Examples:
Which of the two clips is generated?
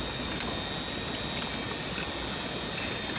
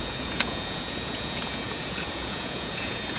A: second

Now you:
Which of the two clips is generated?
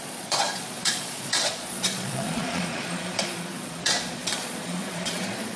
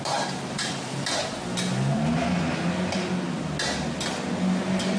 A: first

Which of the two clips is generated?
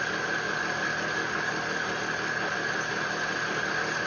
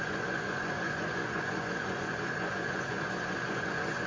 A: second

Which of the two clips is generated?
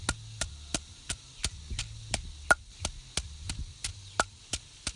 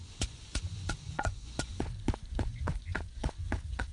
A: second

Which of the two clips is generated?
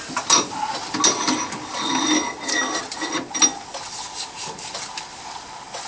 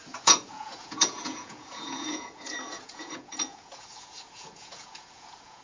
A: second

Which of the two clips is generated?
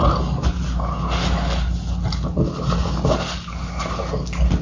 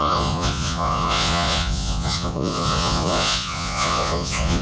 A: second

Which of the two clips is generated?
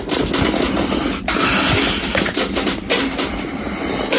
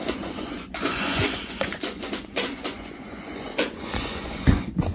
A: second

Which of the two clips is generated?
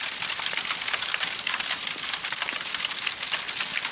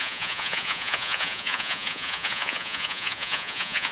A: second